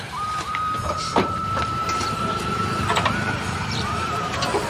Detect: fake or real fake